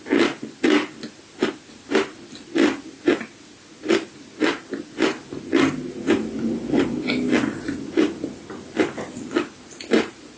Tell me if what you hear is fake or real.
real